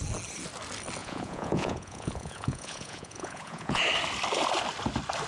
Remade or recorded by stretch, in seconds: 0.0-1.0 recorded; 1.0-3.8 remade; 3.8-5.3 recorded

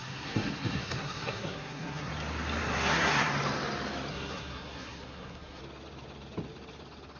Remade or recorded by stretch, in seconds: 0.0-2.1 remade; 2.1-2.6 recorded; 2.6-3.3 remade; 3.3-4.1 recorded; 4.1-5.6 remade; 5.6-7.2 recorded

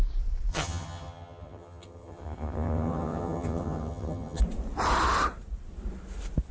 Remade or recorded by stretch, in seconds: 0.0-0.5 recorded; 0.5-4.4 remade; 4.4-6.5 recorded